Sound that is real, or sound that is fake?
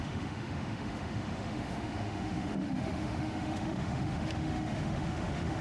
fake